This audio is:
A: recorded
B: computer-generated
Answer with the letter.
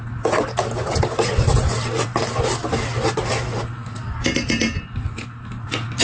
A